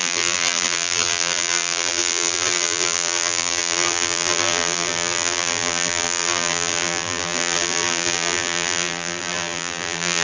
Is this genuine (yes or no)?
no